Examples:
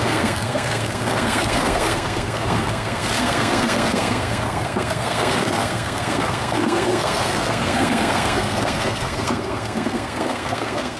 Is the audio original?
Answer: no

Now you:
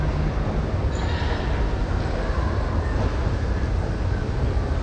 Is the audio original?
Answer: yes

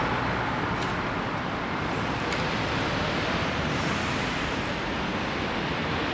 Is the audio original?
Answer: yes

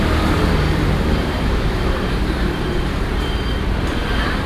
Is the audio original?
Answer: no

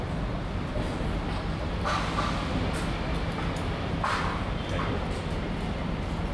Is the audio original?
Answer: yes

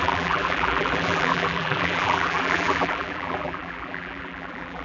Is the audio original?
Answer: no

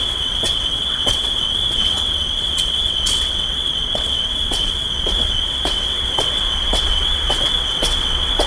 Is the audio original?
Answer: no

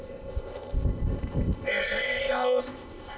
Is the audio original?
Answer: no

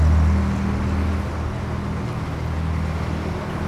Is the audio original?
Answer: yes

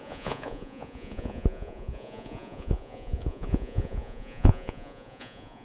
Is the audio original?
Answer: no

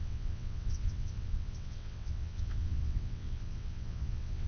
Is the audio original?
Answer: no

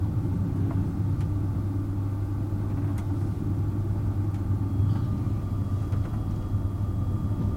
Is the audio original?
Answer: yes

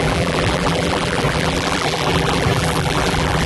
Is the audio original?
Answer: no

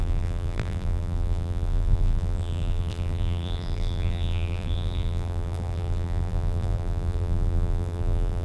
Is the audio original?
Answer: no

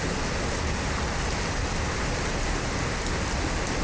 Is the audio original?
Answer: yes